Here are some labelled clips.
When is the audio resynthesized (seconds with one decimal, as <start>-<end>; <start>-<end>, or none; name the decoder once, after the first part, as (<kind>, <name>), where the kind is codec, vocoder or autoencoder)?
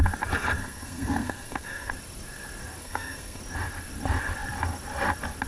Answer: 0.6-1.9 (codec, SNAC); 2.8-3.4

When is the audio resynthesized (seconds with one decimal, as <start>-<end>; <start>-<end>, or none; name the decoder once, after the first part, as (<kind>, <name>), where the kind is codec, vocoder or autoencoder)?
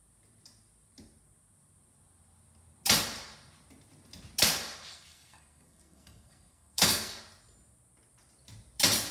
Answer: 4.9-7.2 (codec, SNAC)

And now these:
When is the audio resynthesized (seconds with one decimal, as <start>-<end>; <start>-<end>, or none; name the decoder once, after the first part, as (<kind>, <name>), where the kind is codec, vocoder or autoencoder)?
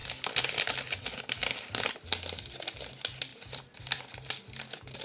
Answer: none